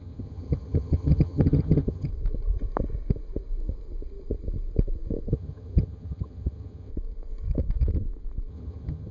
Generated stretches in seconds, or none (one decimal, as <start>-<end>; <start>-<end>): 0.0-2.1; 5.3-6.9; 8.5-9.1